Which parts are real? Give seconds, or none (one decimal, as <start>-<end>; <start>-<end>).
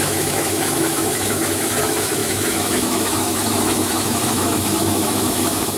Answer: none